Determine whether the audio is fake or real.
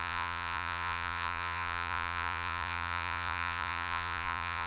fake